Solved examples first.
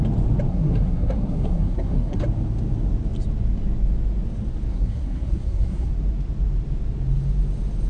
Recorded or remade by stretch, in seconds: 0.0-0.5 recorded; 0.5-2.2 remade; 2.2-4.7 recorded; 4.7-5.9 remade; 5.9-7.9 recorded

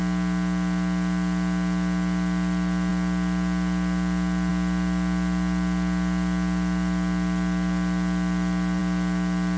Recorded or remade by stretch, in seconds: 0.0-9.6 recorded